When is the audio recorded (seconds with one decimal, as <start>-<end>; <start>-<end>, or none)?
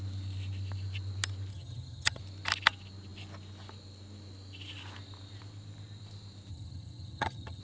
0.0-1.5; 2.2-6.5